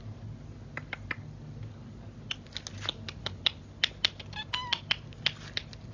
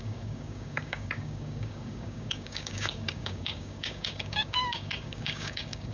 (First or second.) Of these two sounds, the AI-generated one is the second